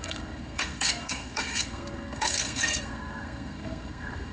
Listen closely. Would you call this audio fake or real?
fake